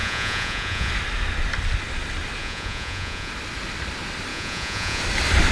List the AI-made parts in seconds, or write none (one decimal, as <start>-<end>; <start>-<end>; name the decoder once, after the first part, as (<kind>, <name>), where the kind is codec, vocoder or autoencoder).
0.0-0.9 (vocoder, Vocos); 2.4-3.3; 4.3-5.0